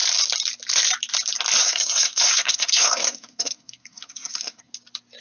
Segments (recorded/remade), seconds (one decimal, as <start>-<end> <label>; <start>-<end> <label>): 0.0-1.6 recorded; 1.6-4.7 remade; 4.7-5.2 recorded